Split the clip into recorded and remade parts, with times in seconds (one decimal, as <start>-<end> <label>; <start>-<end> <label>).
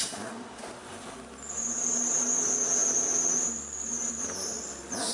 0.0-5.1 recorded